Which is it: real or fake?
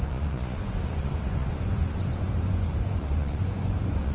fake